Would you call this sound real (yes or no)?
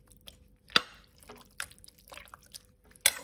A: yes